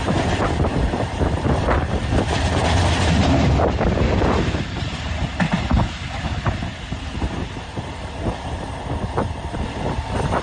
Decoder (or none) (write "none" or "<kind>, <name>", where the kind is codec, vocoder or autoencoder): vocoder, BigVGAN v2